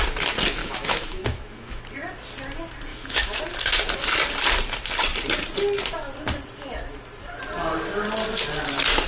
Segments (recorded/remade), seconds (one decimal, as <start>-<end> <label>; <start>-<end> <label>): 0.0-0.6 recorded; 0.6-1.8 remade; 1.8-2.9 recorded; 2.9-3.4 remade; 3.4-9.1 recorded

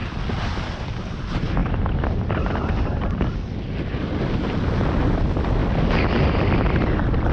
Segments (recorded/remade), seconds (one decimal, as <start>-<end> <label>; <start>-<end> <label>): 0.0-7.3 recorded

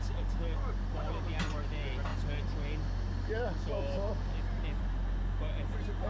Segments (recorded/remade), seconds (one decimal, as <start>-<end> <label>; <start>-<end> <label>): 0.0-6.1 recorded

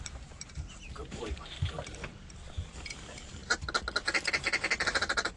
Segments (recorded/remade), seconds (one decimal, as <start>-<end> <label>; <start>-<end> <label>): 0.0-2.0 remade; 2.0-2.7 recorded; 2.7-3.4 remade; 3.4-4.3 recorded; 4.3-5.4 remade

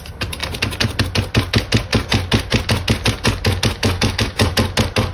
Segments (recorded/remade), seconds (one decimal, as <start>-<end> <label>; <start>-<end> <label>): 0.0-3.8 recorded; 3.8-4.5 remade; 4.5-5.1 recorded

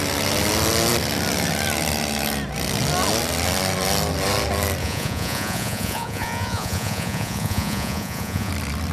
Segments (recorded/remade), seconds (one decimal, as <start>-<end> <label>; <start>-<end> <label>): 0.0-4.8 recorded; 4.8-8.5 remade; 8.5-8.9 recorded

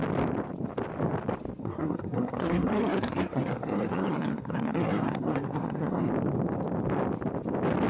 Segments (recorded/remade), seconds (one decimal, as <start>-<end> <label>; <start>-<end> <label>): 0.0-1.6 recorded; 1.6-6.1 remade; 6.1-7.9 recorded